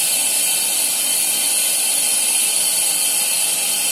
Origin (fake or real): real